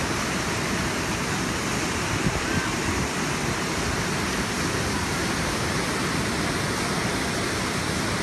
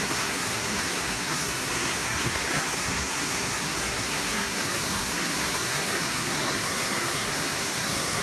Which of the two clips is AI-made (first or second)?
second